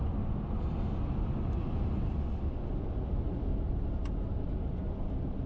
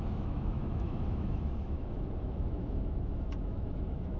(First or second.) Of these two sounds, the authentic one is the first